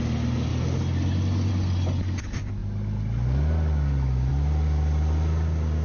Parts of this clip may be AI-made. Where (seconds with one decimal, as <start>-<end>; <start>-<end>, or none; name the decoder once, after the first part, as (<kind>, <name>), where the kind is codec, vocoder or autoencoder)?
none